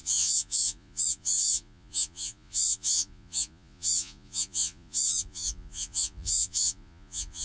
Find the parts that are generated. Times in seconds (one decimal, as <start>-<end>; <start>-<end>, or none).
0.0-7.4